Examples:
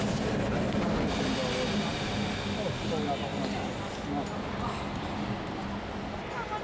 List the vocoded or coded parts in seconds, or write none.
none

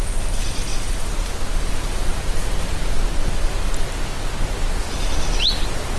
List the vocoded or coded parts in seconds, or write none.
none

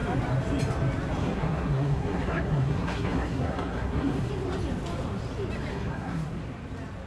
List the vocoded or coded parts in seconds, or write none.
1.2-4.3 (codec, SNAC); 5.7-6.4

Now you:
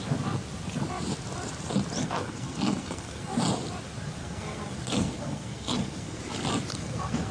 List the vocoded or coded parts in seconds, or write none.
2.0-3.3 (codec, SNAC); 4.2-6.2; 6.7-7.3

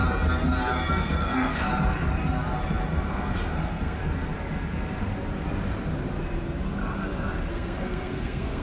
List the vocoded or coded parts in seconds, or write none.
0.9-1.7 (codec, SNAC); 3.1-4.0; 7.5-8.6

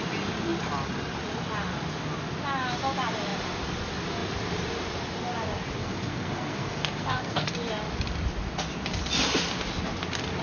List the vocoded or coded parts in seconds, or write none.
5.8-7.5 (codec, SNAC)

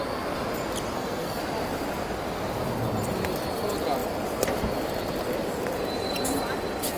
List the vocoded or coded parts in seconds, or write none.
0.9-1.4 (codec, SNAC)